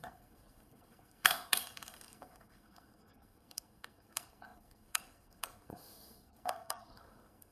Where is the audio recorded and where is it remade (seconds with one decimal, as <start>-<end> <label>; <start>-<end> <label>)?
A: 0.0-7.5 remade